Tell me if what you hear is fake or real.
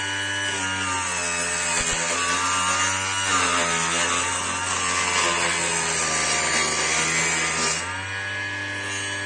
real